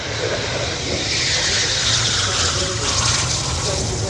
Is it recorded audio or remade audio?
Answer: recorded